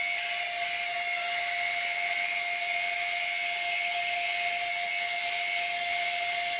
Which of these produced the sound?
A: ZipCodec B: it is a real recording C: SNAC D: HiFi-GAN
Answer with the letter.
B